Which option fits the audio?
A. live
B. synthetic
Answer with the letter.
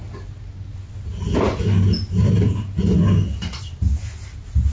A